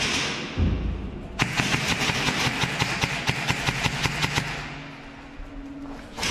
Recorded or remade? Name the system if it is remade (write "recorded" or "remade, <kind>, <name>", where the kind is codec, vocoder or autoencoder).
recorded